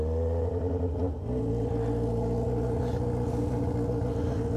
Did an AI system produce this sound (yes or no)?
no